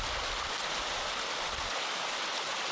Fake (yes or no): no